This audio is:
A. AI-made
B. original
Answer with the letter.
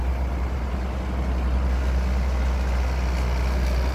B